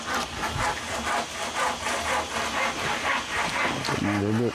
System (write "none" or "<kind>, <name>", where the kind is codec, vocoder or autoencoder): none